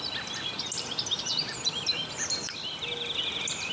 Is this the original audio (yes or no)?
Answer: no